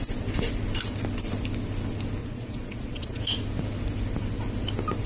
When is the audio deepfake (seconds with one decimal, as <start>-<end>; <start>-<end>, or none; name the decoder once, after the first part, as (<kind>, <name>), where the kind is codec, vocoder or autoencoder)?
2.2-3.2 (vocoder, Vocos)